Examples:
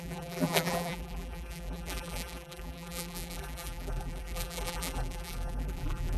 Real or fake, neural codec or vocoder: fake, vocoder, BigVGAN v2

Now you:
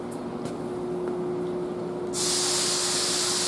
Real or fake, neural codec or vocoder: real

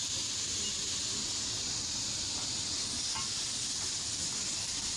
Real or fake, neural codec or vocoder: real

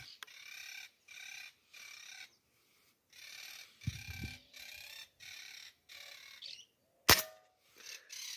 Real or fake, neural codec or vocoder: real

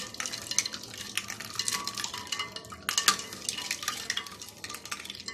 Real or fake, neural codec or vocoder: real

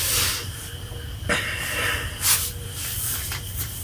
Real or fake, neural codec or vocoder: fake, vocoder, BigVGAN v2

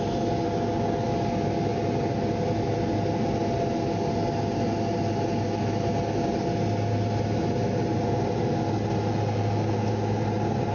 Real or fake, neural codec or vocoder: real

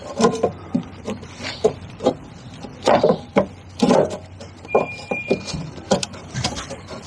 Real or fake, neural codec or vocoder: fake, vocoder, BigVGAN v2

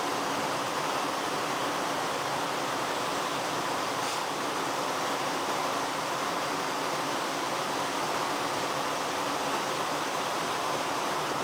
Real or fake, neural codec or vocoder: fake, vocoder, BigVGAN v2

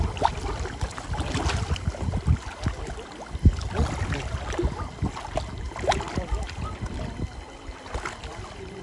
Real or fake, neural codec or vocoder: real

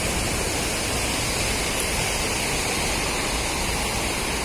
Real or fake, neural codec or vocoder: real